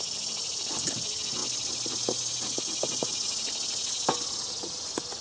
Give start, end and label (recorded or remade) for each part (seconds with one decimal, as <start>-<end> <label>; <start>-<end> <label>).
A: 0.0-5.2 recorded